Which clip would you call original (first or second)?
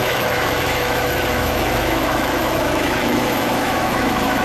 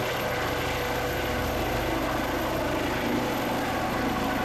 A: second